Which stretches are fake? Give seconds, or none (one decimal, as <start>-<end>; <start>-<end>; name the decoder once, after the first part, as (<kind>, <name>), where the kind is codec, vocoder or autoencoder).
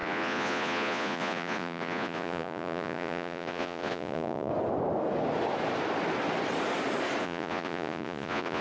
0.0-4.5 (vocoder, Vocos); 7.2-8.6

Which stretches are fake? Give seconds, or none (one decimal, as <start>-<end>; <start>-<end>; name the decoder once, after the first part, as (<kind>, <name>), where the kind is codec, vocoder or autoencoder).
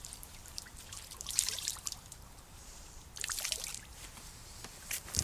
0.0-5.2 (vocoder, BigVGAN v2)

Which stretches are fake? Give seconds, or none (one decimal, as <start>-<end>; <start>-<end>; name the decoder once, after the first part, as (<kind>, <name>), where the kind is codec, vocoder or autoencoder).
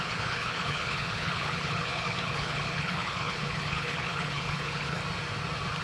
0.0-5.0 (codec, HILCodec)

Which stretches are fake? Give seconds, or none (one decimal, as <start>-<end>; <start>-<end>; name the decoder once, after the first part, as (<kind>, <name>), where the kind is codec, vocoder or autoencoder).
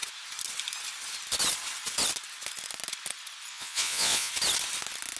3.5-4.3 (vocoder, Vocos)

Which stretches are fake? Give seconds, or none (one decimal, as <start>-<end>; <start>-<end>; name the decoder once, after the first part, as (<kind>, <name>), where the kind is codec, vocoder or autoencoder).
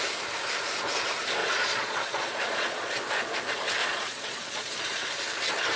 1.4-2.9 (vocoder, Vocos); 3.8-4.8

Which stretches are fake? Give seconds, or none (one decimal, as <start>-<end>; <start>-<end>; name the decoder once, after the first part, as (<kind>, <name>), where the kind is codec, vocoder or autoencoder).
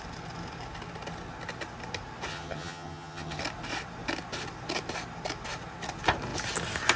2.3-3.4 (vocoder, HiFi-GAN)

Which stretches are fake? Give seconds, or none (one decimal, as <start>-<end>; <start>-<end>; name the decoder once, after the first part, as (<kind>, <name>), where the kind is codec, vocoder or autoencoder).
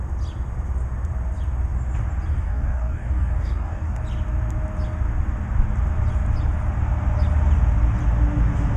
2.3-4.0 (codec, DAC)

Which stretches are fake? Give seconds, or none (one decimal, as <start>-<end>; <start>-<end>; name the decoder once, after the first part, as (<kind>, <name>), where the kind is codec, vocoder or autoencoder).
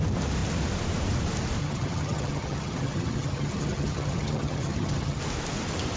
1.6-5.2 (vocoder, HiFi-GAN)